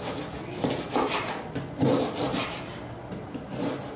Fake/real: real